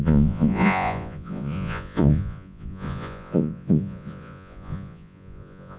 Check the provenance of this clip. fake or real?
fake